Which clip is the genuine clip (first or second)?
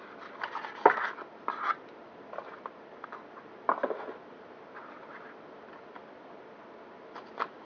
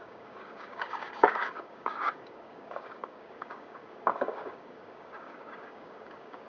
first